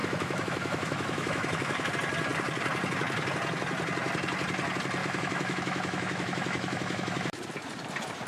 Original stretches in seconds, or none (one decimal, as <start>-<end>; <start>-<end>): 1.9-5.0; 7.4-8.3